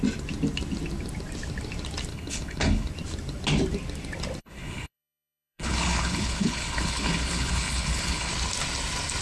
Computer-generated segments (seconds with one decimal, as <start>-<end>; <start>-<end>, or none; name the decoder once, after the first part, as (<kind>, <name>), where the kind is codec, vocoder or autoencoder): 2.1-2.9 (codec, HILCodec); 4.4-8.3